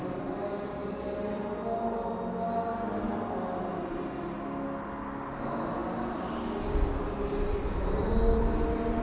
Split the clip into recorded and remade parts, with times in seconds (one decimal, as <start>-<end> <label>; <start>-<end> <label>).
0.0-9.0 recorded